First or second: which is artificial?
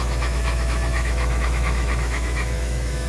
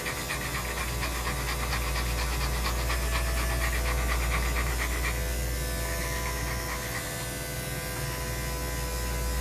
first